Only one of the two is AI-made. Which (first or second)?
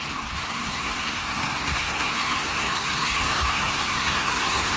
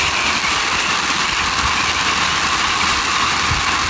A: first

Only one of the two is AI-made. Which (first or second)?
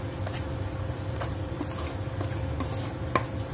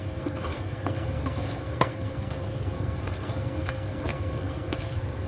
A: second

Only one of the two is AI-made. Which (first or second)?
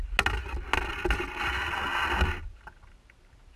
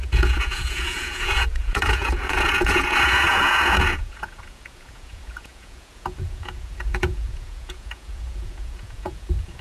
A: second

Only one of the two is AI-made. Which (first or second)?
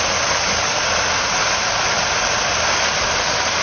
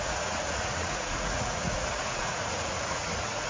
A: second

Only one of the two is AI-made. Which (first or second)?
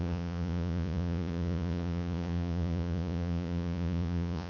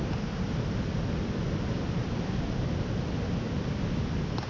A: first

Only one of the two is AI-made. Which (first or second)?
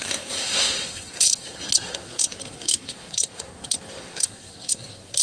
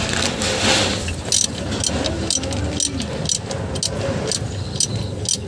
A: first